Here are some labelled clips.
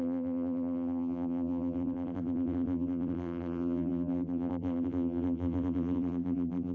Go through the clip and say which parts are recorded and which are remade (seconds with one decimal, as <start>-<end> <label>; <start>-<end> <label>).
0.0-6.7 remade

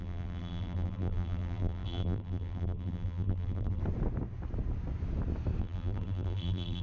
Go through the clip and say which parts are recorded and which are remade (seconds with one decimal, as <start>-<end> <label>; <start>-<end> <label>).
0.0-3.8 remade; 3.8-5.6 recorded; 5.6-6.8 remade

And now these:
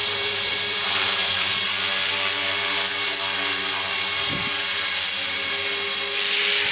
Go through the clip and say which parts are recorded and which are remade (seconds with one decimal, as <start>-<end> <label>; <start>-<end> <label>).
0.0-1.6 remade; 1.6-6.7 recorded

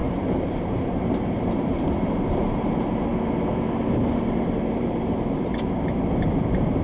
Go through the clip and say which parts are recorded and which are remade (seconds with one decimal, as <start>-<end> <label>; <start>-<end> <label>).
0.0-3.1 remade; 3.1-3.9 recorded; 3.9-5.5 remade; 5.5-6.3 recorded; 6.3-6.8 remade

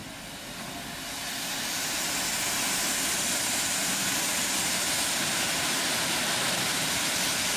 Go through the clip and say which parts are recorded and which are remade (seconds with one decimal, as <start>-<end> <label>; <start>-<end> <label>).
0.0-3.8 recorded; 3.8-7.0 remade; 7.0-7.6 recorded

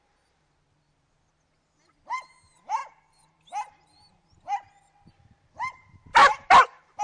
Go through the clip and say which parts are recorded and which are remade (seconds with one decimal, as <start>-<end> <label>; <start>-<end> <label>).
0.0-6.1 recorded; 6.1-7.0 remade

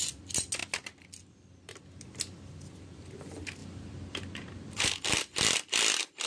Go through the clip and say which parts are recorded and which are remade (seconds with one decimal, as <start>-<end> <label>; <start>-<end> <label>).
0.0-0.6 recorded; 0.6-1.5 remade; 1.5-3.6 recorded; 3.6-4.8 remade; 4.8-6.3 recorded